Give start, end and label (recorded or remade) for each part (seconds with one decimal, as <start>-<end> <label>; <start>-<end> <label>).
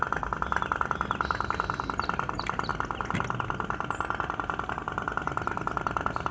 0.0-6.3 recorded